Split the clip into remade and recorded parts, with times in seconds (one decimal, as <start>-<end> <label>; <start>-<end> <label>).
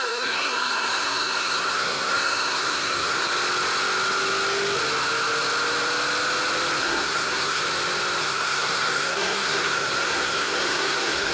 0.0-3.3 remade; 3.3-6.8 recorded; 6.8-7.6 remade; 7.6-8.2 recorded; 8.2-11.3 remade